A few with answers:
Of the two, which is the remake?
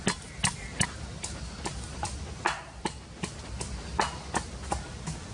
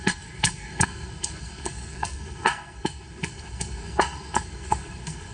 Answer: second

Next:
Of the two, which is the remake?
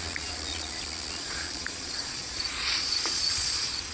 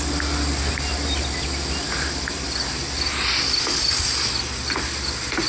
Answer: first